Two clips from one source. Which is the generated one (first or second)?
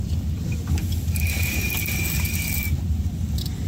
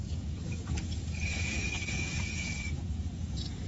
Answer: second